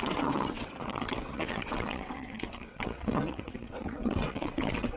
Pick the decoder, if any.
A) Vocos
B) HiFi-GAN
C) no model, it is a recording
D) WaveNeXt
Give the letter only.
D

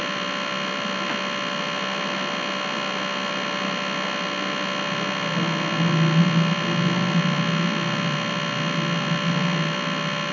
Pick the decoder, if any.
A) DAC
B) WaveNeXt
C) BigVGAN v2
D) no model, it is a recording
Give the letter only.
D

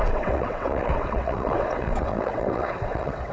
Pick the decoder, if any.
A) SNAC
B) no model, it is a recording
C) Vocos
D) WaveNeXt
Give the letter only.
D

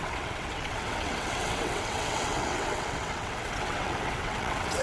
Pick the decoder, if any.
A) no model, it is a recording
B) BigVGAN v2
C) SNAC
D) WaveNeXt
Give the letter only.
D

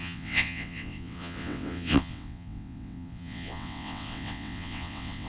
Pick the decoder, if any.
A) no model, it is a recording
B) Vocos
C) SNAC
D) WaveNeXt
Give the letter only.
D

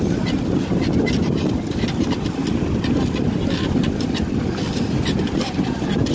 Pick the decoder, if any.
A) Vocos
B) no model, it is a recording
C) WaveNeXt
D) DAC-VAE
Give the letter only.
B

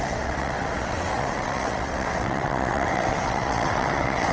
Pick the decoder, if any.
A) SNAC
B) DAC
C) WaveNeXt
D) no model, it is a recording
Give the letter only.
C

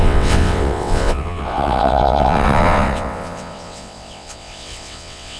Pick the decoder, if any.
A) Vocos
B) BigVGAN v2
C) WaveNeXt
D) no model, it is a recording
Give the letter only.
C